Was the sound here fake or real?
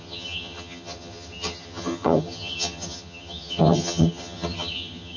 fake